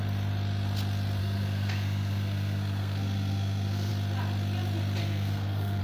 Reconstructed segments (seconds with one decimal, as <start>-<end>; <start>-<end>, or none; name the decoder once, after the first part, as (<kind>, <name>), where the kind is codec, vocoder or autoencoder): 1.2-3.9 (codec, SNAC); 5.0-5.8